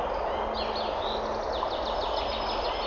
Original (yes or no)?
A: yes